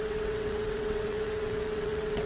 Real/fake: fake